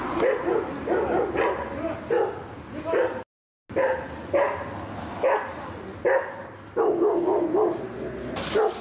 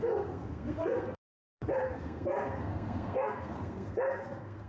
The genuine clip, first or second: first